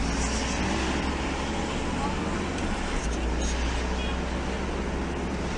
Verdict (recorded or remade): recorded